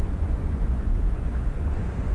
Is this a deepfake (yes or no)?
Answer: yes